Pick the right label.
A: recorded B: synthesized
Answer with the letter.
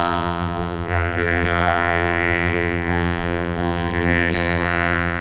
B